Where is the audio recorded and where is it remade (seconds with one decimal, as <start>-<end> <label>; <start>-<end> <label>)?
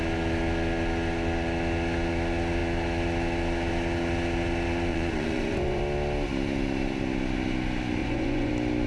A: 0.0-4.9 recorded; 4.9-5.8 remade; 5.8-8.0 recorded; 8.0-8.5 remade; 8.5-8.9 recorded